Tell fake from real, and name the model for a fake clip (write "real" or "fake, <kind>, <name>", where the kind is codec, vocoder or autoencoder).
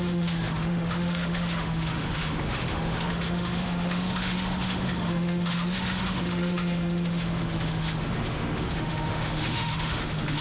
fake, autoencoder, DAC-VAE